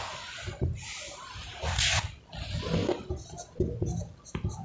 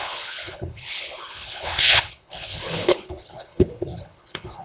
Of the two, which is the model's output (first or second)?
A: second